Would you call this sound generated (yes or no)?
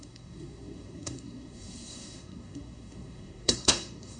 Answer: yes